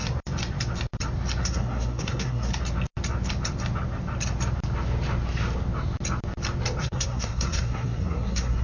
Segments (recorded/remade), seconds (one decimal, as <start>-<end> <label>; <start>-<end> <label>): 0.0-1.4 recorded; 1.4-2.5 remade; 2.5-6.8 recorded; 6.8-8.6 remade